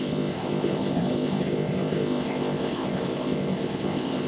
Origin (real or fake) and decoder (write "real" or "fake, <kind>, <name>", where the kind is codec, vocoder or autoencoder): fake, codec, ZipCodec